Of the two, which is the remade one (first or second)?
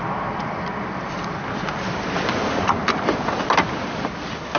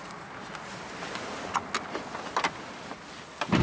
first